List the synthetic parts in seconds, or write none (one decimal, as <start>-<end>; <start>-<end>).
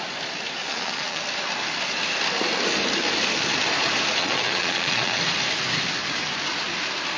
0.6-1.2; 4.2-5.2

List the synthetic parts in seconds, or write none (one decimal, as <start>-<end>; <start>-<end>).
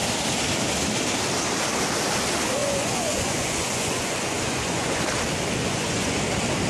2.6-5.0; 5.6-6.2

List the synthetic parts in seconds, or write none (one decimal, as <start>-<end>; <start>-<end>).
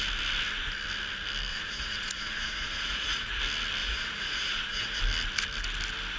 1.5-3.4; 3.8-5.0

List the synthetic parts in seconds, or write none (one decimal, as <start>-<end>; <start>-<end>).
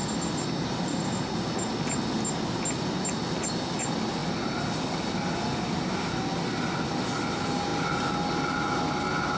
none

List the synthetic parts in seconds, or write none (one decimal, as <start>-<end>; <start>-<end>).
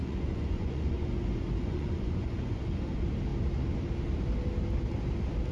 0.0-2.6